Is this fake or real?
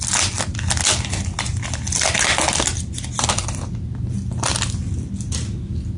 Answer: real